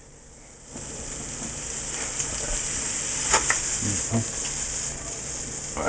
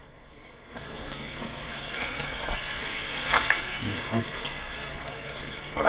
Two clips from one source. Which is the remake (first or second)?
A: second